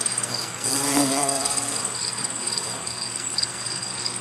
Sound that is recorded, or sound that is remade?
remade